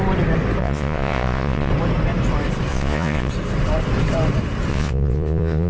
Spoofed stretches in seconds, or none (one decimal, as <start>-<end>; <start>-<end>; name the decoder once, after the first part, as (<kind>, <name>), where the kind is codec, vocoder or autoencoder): 0.6-1.7 (vocoder, Vocos); 2.7-3.3; 4.7-5.7